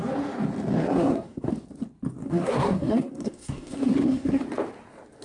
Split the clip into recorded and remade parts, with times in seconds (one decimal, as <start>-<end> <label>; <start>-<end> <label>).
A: 0.0-0.8 recorded; 0.8-1.5 remade; 1.5-2.2 recorded; 2.2-4.4 remade; 4.4-5.2 recorded